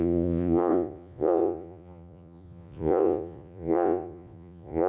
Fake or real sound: fake